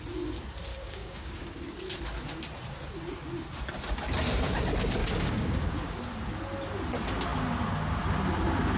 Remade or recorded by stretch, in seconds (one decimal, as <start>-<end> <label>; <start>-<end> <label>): 0.0-0.7 recorded; 0.7-1.6 remade; 1.6-5.0 recorded; 5.0-6.0 remade; 6.0-8.8 recorded

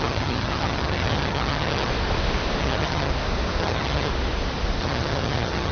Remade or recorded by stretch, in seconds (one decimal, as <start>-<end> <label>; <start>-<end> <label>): 0.0-1.9 remade; 1.9-2.6 recorded; 2.6-3.1 remade; 3.1-3.6 recorded; 3.6-4.1 remade; 4.1-4.8 recorded; 4.8-5.7 remade

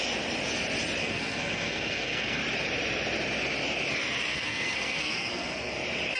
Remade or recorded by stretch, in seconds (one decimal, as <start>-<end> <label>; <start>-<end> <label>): 0.0-1.0 recorded; 1.0-2.4 remade; 2.4-4.3 recorded; 4.3-5.7 remade; 5.7-6.2 recorded

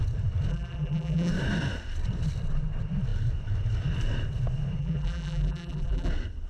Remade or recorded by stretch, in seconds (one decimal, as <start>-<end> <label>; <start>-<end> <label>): 0.0-0.5 recorded; 0.5-1.3 remade; 1.3-4.8 recorded; 4.8-6.1 remade; 6.1-6.5 recorded

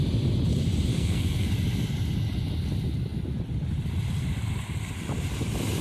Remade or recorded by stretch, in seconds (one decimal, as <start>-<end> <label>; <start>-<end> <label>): 0.0-0.9 recorded; 0.9-1.5 remade; 1.5-5.8 recorded

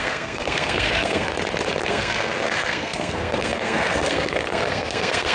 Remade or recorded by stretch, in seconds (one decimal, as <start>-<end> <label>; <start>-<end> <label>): 0.0-1.3 remade; 1.3-1.9 recorded; 1.9-5.3 remade

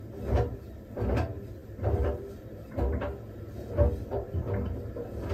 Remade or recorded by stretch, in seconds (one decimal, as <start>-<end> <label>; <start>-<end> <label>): 0.0-5.3 recorded

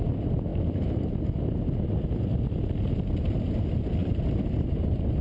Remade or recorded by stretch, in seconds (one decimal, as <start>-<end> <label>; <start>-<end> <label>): 0.0-5.2 recorded